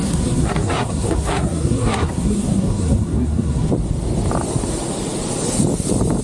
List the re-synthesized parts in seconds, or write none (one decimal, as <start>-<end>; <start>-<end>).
0.0-3.7